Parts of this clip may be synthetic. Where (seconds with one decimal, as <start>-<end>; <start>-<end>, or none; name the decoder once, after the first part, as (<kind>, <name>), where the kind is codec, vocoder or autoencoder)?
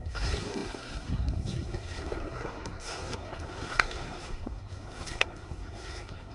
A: 0.0-6.3 (codec, SNAC)